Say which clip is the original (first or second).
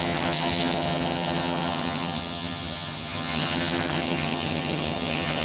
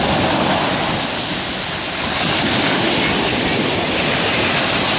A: second